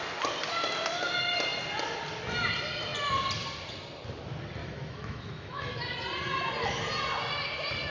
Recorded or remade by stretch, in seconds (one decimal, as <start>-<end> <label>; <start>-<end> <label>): 0.0-4.6 recorded; 4.6-5.7 remade; 5.7-7.9 recorded